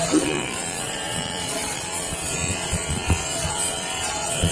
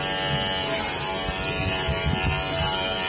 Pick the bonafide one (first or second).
second